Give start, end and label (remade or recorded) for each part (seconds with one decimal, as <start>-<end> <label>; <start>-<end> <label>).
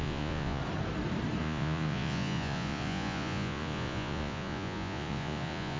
0.0-0.6 remade; 0.6-1.4 recorded; 1.4-5.8 remade